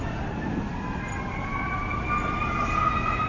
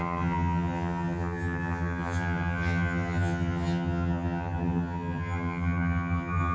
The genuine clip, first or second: first